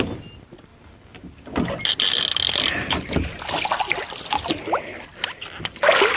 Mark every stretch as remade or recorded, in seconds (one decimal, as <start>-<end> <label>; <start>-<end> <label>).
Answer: 0.0-6.2 recorded